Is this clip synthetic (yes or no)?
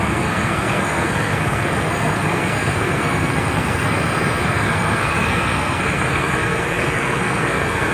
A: yes